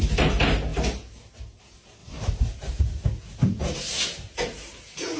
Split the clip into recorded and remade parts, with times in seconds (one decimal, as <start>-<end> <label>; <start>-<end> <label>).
0.0-2.0 recorded; 2.0-2.8 remade; 2.8-5.2 recorded